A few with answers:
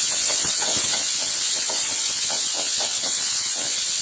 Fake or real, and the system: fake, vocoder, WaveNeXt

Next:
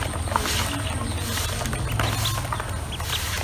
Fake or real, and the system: real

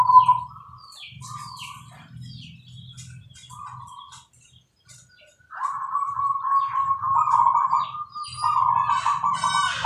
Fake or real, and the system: real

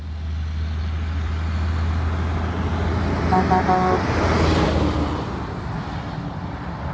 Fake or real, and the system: real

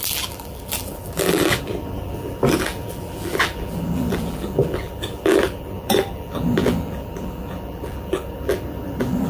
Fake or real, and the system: fake, vocoder, BigVGAN v2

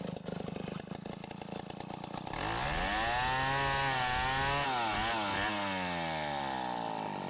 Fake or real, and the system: real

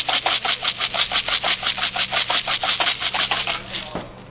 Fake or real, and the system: real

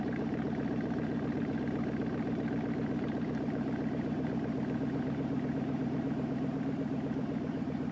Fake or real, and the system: fake, vocoder, BigVGAN v2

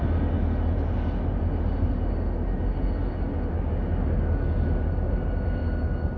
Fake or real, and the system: real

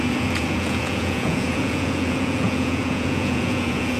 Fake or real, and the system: fake, vocoder, Vocos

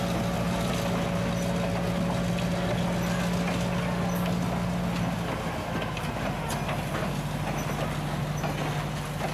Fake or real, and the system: real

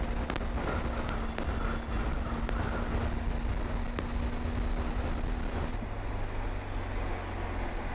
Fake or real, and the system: real